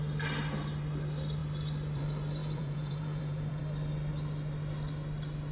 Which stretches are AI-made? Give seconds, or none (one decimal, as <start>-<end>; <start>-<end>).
2.4-3.6